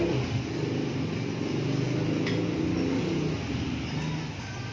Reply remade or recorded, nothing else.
recorded